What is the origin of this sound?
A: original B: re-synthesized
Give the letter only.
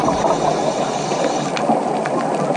A